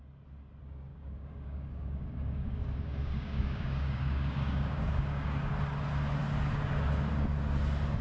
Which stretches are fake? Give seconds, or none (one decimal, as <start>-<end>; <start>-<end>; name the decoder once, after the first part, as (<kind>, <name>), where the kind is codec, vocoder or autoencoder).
0.9-5.5 (codec, DAC)

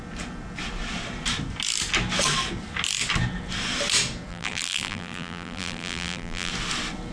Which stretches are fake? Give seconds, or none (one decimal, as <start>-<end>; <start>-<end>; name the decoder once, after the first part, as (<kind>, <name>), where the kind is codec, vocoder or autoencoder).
4.3-6.5 (vocoder, BigVGAN v2)

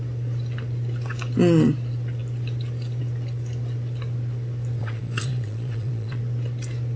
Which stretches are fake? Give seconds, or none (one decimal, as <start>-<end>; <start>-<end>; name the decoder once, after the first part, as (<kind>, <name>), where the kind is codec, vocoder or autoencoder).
4.8-6.2 (vocoder, Vocos)

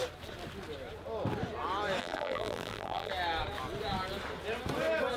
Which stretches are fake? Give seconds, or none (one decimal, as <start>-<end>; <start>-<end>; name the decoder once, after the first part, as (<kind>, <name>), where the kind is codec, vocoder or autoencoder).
2.0-3.1 (vocoder, BigVGAN v2)